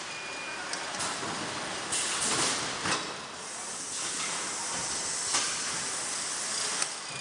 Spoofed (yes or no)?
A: no